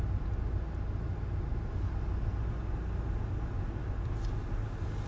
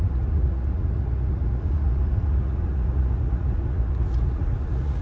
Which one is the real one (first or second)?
first